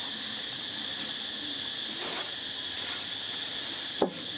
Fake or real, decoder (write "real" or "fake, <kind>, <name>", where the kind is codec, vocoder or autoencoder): real